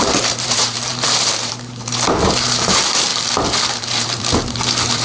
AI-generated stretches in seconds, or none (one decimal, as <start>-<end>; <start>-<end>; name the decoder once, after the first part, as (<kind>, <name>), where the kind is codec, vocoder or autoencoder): 0.0-3.1 (vocoder, BigVGAN v2); 3.7-5.0